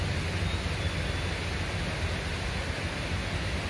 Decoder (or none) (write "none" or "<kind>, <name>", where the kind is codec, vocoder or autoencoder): none